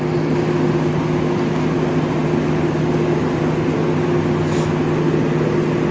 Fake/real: real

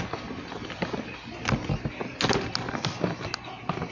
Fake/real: real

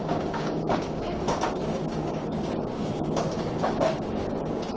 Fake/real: fake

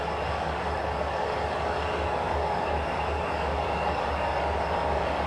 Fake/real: fake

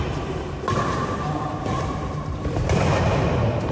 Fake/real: real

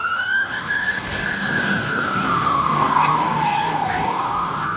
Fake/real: fake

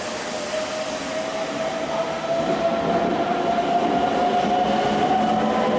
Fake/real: real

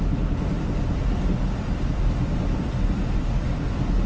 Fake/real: real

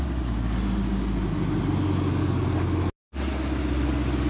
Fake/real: real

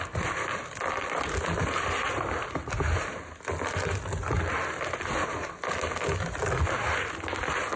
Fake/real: real